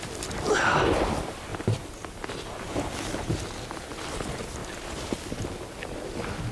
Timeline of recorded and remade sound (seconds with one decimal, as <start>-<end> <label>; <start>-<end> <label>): 0.0-1.5 recorded; 1.5-2.6 remade; 2.6-4.6 recorded; 4.6-5.4 remade; 5.4-6.5 recorded